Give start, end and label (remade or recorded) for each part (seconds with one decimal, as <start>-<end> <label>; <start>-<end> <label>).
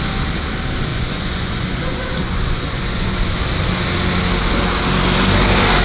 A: 0.0-0.9 recorded; 0.9-3.4 remade; 3.4-5.8 recorded